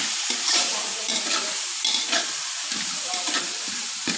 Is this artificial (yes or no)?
yes